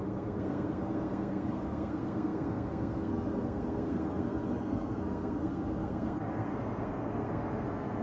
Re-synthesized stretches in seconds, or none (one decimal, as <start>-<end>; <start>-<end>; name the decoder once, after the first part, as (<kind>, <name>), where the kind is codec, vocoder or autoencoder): 0.0-8.0 (codec, SNAC)

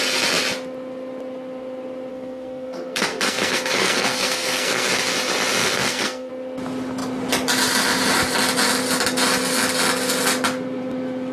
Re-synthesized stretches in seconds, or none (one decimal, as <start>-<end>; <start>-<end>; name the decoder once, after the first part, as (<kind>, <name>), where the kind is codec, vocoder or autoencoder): 2.1-4.9 (codec, SNAC); 5.6-6.3

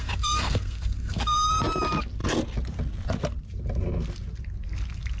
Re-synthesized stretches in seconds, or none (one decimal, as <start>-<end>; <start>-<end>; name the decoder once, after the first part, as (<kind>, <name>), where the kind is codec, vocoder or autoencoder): 0.0-1.6 (codec, SNAC)